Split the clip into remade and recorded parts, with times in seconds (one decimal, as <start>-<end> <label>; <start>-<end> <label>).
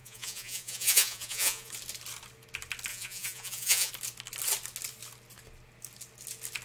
0.0-1.7 remade; 1.7-2.9 recorded; 2.9-3.9 remade; 3.9-6.6 recorded